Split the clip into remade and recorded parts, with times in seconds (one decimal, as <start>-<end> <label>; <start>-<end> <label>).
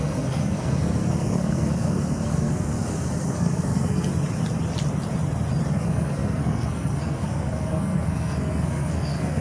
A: 0.0-4.1 remade; 4.1-5.7 recorded; 5.7-9.4 remade